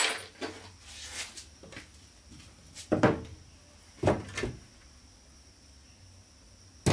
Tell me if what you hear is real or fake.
real